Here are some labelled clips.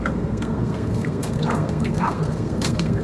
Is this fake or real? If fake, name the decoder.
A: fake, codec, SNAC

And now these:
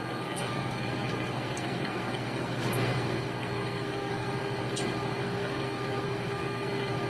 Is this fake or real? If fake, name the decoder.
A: fake, codec, SNAC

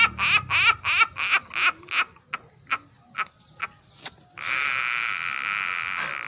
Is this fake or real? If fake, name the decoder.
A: real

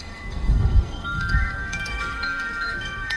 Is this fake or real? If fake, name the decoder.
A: fake, codec, SNAC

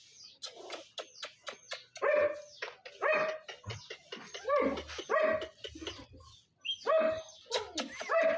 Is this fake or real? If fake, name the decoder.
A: real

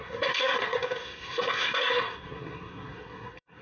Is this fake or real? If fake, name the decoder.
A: fake, codec, SNAC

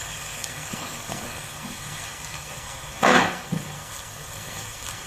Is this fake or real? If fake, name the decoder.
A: fake, codec, SNAC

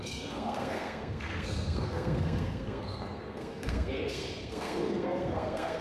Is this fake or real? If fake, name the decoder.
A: fake, codec, SNAC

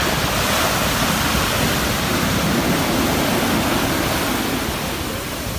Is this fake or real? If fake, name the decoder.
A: real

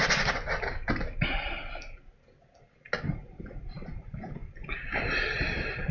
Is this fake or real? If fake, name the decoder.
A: real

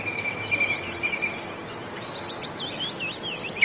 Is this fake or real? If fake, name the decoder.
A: real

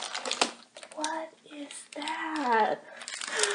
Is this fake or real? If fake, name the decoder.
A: real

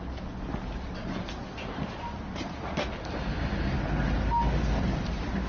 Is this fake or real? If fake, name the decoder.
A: real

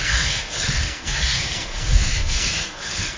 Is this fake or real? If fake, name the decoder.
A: fake, codec, SNAC